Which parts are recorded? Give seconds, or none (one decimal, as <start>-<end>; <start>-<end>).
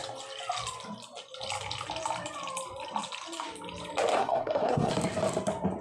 0.0-4.1; 4.9-5.8